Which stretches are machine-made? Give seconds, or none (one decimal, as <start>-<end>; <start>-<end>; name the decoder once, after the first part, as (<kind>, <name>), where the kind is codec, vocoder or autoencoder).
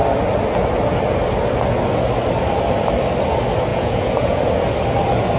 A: 3.7-4.4 (vocoder, Vocos)